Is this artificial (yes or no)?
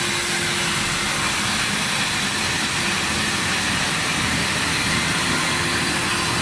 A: no